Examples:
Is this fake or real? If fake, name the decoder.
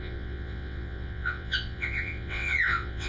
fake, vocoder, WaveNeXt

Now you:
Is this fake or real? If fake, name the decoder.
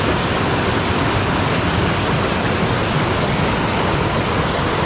real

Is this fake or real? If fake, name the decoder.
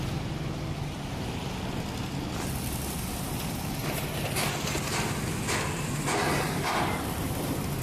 real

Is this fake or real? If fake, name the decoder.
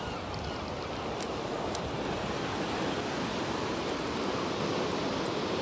real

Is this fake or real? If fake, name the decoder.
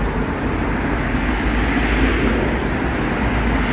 real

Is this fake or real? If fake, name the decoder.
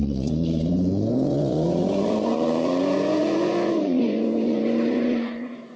fake, vocoder, Vocos